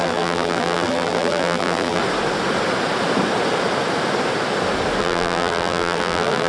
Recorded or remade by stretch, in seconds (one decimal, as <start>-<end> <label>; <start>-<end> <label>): 0.0-2.0 remade; 2.0-5.0 recorded; 5.0-6.5 remade